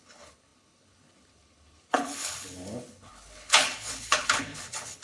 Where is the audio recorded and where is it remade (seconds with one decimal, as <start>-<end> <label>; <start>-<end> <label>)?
0.0-5.0 remade